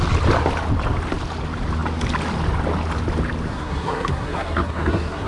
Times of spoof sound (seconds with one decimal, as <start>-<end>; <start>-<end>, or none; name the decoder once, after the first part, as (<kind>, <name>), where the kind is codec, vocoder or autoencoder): 3.5-5.3 (codec, SNAC)